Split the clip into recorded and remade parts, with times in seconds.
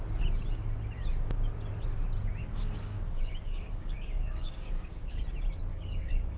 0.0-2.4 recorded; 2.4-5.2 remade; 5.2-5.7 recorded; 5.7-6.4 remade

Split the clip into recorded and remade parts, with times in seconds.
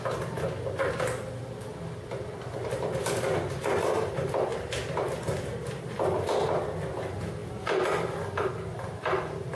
0.0-9.5 recorded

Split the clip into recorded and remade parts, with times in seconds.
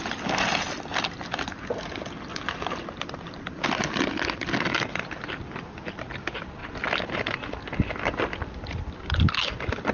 0.0-9.9 recorded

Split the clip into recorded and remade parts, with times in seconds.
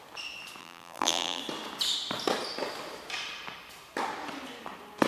0.0-0.6 recorded; 0.6-1.4 remade; 1.4-5.1 recorded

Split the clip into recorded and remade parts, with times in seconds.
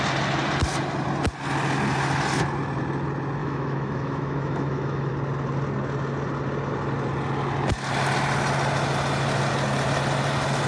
0.0-3.4 recorded; 3.4-5.1 remade; 5.1-10.7 recorded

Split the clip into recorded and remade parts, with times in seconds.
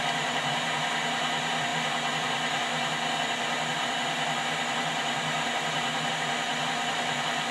0.0-7.5 recorded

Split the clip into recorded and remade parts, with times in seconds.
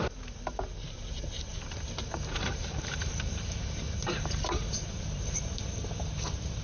0.0-0.9 recorded; 0.9-6.6 remade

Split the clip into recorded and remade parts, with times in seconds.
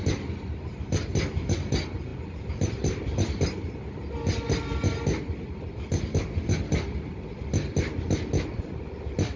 0.0-9.4 recorded